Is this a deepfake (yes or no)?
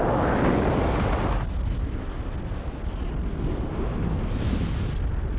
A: no